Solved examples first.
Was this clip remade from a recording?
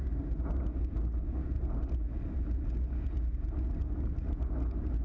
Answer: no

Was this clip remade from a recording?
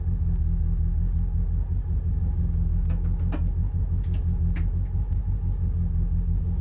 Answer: no